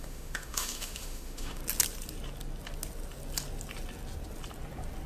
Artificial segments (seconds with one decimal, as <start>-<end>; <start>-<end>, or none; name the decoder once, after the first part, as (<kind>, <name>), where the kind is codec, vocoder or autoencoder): 0.0-1.6 (autoencoder, DAC-VAE)